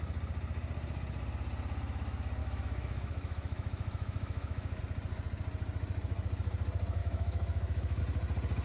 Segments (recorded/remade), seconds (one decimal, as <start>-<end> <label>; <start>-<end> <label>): 0.0-2.4 recorded; 2.4-4.8 remade; 4.8-7.0 recorded; 7.0-8.0 remade; 8.0-8.6 recorded